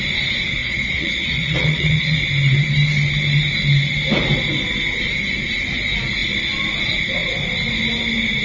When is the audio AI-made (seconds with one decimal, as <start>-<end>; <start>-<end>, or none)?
0.6-2.2